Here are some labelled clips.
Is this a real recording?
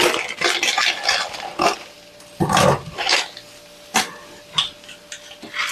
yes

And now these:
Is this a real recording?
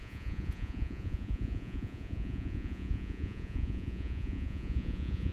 no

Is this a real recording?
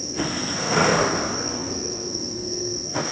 no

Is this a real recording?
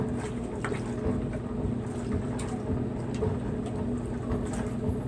yes